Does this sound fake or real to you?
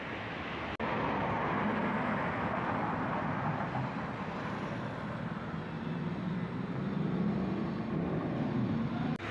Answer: real